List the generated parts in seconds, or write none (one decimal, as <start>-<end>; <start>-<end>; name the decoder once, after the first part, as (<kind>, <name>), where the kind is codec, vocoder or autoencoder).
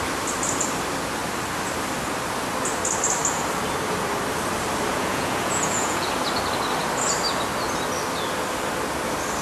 4.9-6.1 (vocoder, Vocos)